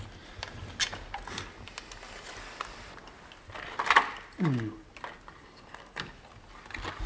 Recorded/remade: recorded